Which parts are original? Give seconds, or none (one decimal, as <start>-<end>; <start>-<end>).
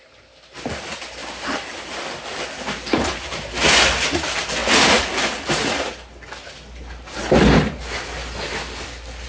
0.0-9.3